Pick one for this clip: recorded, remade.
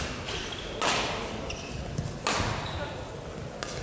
recorded